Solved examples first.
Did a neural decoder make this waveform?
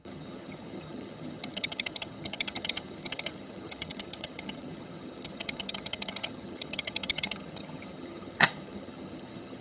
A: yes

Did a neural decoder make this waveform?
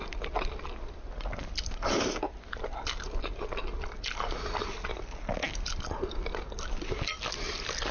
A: no